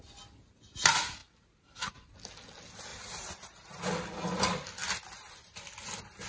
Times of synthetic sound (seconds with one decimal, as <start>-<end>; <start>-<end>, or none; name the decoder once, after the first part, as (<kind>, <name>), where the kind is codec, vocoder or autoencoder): 1.2-1.9 (vocoder, BigVGAN v2); 2.9-3.8